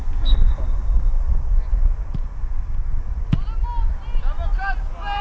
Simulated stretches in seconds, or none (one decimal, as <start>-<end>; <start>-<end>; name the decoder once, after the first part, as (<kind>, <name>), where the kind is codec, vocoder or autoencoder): none